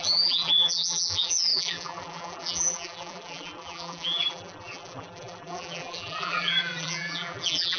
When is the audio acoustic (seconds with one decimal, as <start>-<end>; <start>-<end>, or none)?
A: none